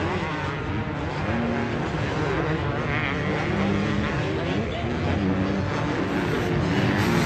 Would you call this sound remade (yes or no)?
no